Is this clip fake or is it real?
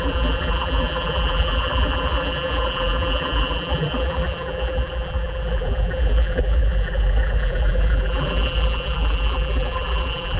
fake